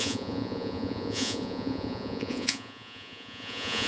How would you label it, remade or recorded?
remade